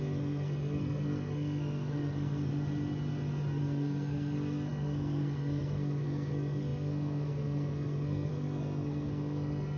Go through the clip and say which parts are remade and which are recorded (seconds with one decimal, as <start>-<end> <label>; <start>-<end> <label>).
0.0-2.5 remade; 2.5-3.6 recorded; 3.6-9.8 remade